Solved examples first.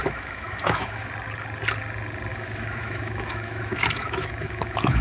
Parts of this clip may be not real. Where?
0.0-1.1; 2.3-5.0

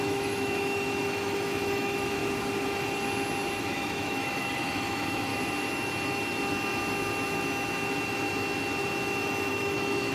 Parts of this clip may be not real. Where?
0.0-2.2; 3.6-5.3; 9.5-10.1

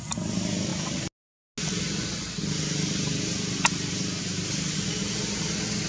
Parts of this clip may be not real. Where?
none

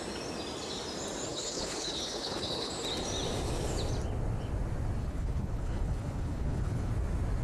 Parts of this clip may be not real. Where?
1.3-2.7; 5.0-6.9

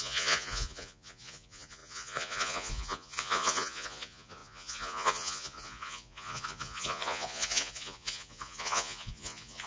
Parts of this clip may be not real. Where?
0.0-9.7

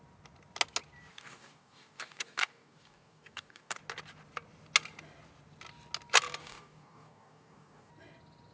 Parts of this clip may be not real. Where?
1.1-3.8; 6.4-7.9

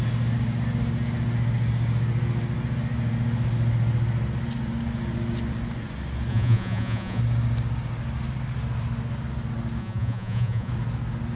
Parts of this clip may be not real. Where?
6.3-7.2; 9.8-10.7